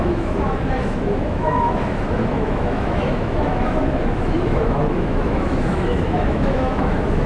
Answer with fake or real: fake